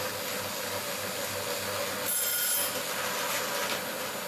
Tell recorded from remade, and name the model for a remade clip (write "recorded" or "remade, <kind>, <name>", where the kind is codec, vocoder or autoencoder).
recorded